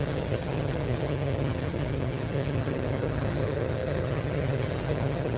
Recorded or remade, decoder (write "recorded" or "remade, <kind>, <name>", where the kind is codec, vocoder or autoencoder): remade, vocoder, HiFi-GAN